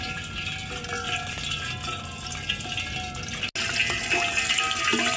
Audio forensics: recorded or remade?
recorded